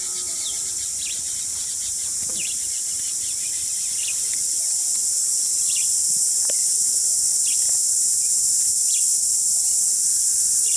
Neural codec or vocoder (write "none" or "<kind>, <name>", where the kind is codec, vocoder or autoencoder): none